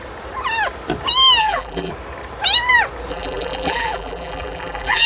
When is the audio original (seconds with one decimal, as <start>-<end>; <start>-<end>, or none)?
0.0-1.4; 1.9-3.1